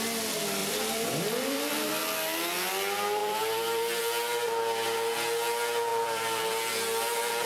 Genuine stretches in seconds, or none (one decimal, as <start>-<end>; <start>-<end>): 0.0-0.6; 1.9-3.2; 4.0-5.9; 6.4-7.5